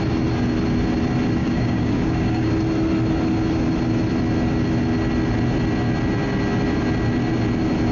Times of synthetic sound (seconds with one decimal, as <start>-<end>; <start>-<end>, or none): 1.4-2.5